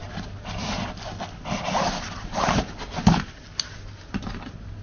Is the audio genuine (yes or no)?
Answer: yes